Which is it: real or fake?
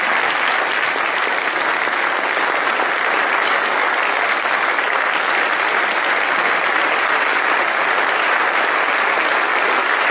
real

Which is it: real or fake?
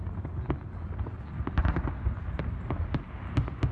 real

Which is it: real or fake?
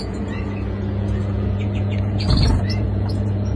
fake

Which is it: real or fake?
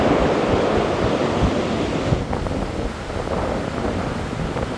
real